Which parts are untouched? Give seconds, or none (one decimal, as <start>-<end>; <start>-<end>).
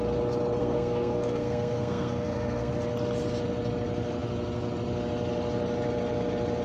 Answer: 0.0-0.6; 2.7-6.6